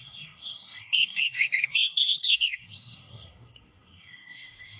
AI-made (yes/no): yes